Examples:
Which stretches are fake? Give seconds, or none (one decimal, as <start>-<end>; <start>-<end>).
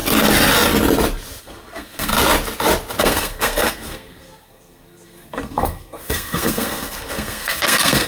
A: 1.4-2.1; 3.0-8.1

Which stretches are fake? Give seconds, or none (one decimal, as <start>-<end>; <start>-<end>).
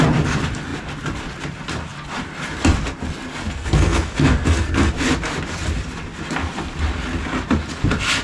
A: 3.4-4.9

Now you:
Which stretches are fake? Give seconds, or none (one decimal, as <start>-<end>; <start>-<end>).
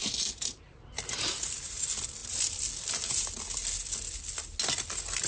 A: none